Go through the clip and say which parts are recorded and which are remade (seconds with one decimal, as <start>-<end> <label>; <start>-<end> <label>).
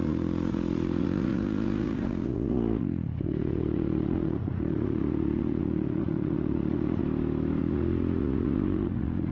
0.0-7.0 remade; 7.0-7.6 recorded; 7.6-9.3 remade